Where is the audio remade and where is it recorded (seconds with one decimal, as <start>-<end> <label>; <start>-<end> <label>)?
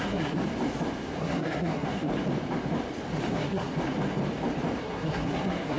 0.0-0.4 remade; 0.4-1.2 recorded; 1.2-2.1 remade; 2.1-3.3 recorded; 3.3-3.7 remade; 3.7-4.8 recorded; 4.8-5.8 remade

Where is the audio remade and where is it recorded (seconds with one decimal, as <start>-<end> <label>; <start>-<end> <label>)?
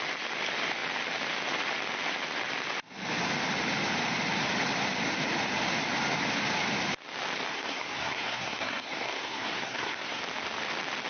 0.0-7.5 recorded; 7.5-10.2 remade; 10.2-11.1 recorded